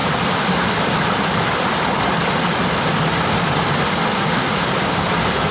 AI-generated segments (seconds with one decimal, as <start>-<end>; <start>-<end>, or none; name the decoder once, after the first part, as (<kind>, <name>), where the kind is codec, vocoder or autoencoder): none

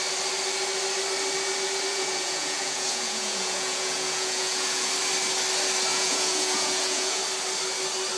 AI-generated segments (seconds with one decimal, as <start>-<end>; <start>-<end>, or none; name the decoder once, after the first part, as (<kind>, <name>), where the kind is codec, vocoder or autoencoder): 1.9-4.9 (vocoder, Vocos); 5.9-7.2

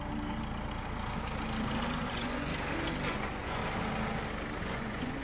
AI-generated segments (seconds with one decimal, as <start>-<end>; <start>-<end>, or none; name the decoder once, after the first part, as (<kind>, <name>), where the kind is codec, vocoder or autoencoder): 2.1-2.5 (vocoder, Vocos); 3.1-3.6; 4.6-5.2

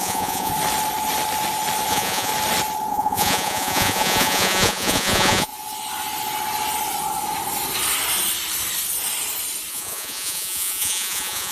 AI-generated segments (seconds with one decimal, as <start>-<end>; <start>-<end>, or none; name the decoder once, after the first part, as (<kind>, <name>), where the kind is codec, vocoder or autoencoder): 0.0-0.5 (vocoder, Vocos); 1.9-2.3; 2.9-5.5; 9.7-11.5